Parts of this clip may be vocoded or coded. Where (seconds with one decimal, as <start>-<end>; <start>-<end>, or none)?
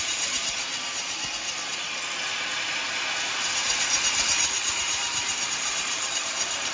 0.0-0.7; 4.7-6.7